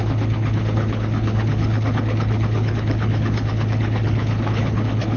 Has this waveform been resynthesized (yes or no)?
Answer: yes